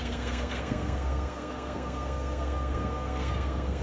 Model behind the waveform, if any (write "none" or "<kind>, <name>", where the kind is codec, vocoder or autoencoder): codec, SNAC